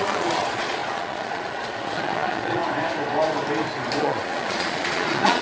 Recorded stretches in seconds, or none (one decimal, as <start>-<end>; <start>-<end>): 2.6-4.0

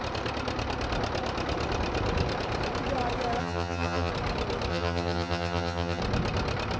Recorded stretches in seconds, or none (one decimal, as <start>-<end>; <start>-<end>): 0.0-3.4; 4.1-4.7; 6.0-6.8

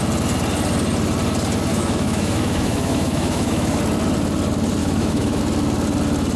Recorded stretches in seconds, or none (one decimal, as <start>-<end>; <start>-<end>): 0.0-1.7; 3.8-4.8; 5.4-6.4

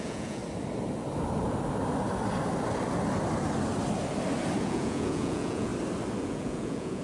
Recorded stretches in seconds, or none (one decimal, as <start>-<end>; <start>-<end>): 0.4-4.6; 5.7-6.2